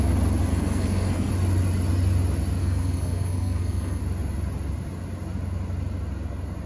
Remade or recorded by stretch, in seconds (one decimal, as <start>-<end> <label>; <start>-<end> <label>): 0.0-0.5 recorded; 0.5-1.3 remade; 1.3-2.6 recorded; 2.6-4.0 remade; 4.0-6.7 recorded